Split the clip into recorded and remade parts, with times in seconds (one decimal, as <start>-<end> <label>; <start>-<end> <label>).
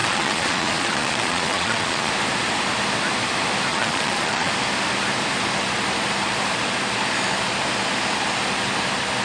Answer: 0.0-2.1 remade; 2.1-3.7 recorded; 3.7-4.5 remade; 4.5-9.2 recorded